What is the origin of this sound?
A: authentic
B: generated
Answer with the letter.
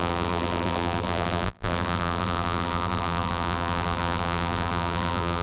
B